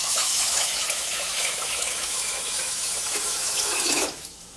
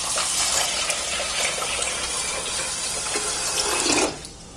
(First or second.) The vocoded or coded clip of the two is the first